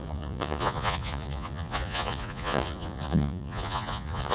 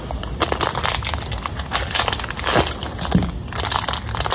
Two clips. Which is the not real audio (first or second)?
first